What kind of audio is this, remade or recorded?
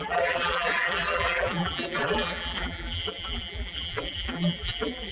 remade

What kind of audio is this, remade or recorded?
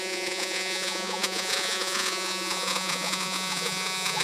remade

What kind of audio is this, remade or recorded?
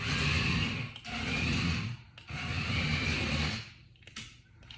recorded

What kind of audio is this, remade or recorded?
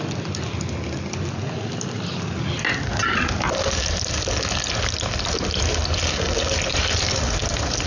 recorded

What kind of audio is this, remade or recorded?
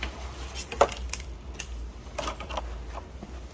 recorded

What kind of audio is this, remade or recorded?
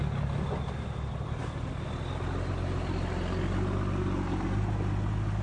recorded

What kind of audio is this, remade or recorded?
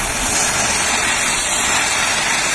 recorded